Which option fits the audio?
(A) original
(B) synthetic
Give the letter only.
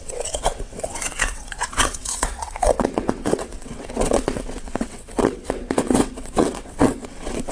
B